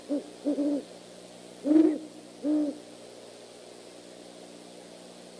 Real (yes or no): yes